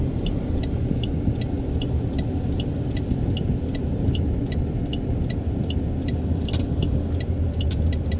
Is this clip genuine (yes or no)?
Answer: yes